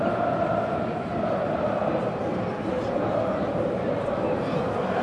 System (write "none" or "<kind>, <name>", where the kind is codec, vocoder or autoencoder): none